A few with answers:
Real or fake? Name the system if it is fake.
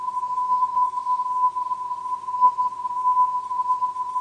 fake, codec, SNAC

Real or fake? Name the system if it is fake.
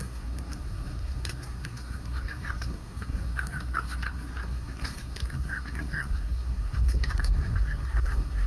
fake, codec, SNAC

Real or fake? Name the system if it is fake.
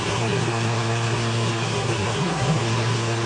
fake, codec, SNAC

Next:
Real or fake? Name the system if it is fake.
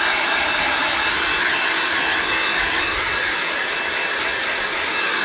real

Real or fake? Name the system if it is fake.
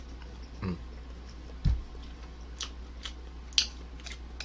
real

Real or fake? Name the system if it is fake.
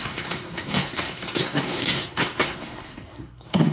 fake, codec, SNAC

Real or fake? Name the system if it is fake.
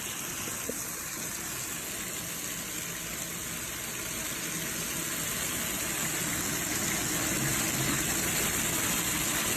real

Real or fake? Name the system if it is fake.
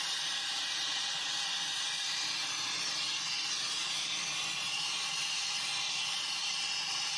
real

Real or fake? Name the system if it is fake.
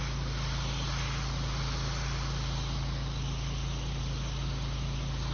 real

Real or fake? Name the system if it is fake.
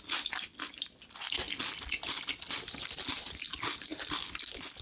real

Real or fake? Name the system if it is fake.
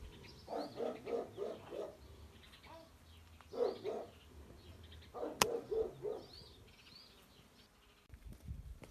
real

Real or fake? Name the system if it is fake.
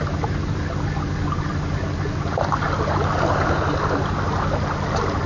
real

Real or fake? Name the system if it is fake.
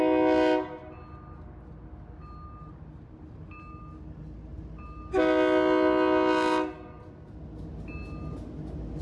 real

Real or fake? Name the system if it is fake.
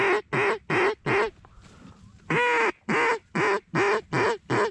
real